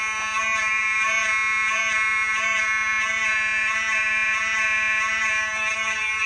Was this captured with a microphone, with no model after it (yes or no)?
no